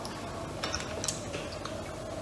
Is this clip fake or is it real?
real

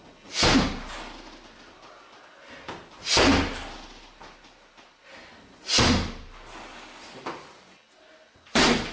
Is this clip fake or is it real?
real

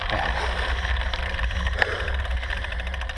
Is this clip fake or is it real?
real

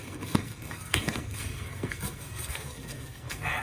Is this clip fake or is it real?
fake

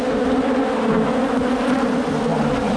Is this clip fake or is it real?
real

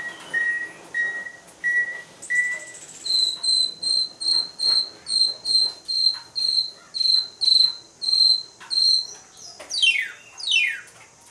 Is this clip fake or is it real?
real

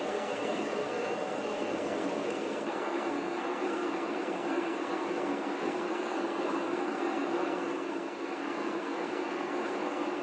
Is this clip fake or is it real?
fake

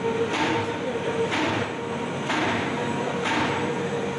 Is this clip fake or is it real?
real